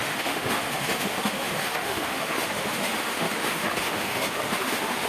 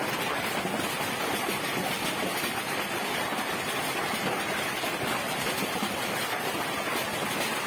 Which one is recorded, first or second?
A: second